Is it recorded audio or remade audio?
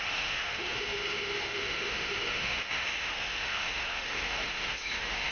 remade